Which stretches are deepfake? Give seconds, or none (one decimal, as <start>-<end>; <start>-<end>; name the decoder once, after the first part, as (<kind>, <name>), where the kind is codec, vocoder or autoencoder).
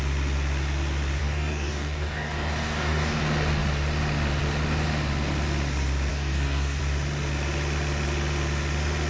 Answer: 1.2-3.2 (codec, DAC); 6.1-6.8